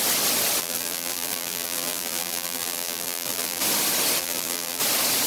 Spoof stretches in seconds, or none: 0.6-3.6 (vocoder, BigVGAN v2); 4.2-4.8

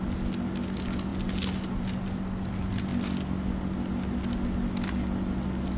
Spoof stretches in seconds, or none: none

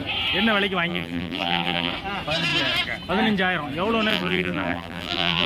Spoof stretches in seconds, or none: 0.9-1.9 (vocoder, BigVGAN v2); 4.1-5.5